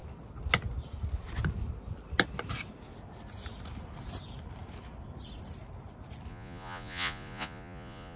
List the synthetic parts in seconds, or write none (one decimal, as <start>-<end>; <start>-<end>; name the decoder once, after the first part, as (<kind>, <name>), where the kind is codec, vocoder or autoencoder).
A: 6.3-8.2 (vocoder, Vocos)

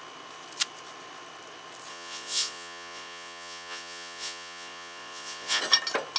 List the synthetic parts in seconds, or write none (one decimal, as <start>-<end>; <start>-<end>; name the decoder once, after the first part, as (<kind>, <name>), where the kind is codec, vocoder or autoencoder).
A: 1.9-5.6 (vocoder, Vocos)

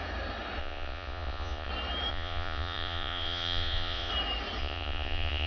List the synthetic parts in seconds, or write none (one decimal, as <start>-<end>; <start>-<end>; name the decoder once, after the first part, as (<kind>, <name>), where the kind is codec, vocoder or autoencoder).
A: 0.6-1.7 (vocoder, Vocos); 2.1-4.1; 4.6-5.5

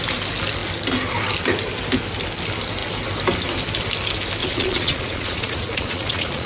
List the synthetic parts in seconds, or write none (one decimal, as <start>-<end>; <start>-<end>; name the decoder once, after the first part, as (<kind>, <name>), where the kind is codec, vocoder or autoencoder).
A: 4.4-6.5 (vocoder, Vocos)

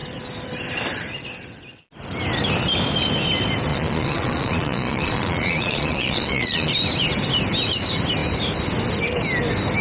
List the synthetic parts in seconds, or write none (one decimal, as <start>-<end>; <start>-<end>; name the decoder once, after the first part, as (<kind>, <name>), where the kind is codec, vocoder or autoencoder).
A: 3.7-6.7 (vocoder, Vocos)

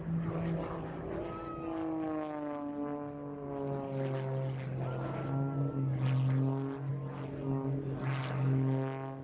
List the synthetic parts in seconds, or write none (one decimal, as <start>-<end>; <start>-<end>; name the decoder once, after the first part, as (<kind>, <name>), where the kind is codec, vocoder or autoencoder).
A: none